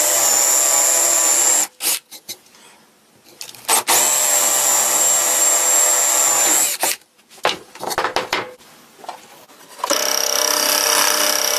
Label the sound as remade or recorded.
recorded